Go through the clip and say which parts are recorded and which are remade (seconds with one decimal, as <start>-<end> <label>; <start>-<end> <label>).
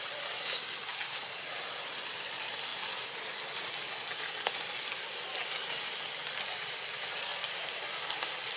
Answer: 0.0-8.6 recorded